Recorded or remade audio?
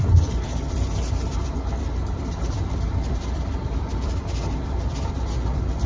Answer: remade